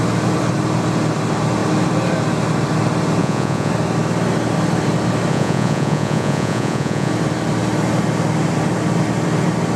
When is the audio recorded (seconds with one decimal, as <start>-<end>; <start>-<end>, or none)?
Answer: 0.0-3.2; 3.7-5.3; 7.1-9.8